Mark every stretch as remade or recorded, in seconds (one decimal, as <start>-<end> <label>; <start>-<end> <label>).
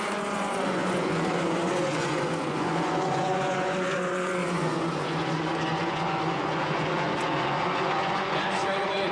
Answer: 0.0-9.1 remade